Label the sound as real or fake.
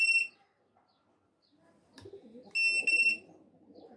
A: real